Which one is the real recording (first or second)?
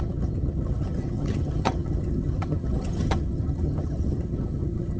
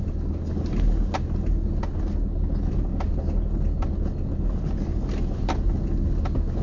second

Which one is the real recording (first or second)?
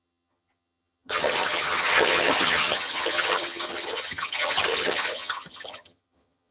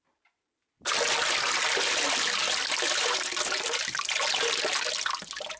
second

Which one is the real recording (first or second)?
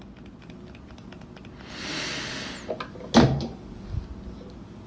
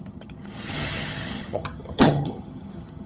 first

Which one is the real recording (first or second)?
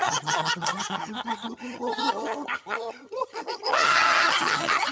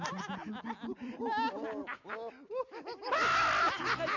second